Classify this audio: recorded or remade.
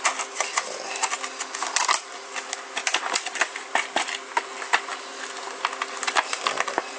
recorded